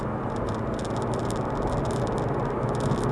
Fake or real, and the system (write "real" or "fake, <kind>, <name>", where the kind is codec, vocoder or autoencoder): real